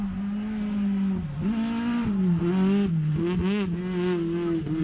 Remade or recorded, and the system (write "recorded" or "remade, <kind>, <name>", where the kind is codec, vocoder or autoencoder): recorded